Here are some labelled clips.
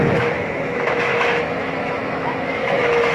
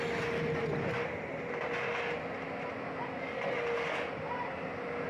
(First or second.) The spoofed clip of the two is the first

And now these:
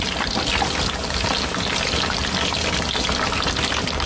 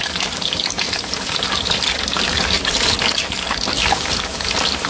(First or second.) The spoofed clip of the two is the second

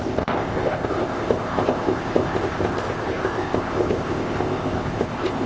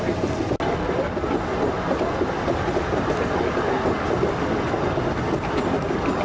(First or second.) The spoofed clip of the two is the first